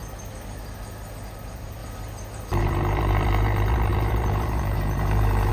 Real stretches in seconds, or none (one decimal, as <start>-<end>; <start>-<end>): 0.0-1.3; 1.8-2.6